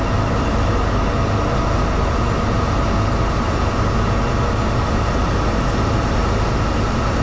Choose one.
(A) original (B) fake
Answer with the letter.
A